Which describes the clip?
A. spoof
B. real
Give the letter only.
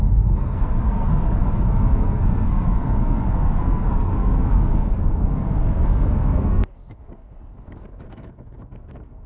A